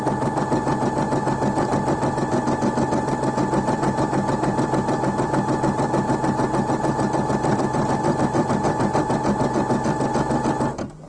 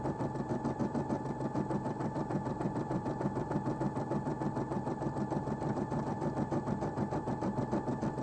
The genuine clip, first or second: first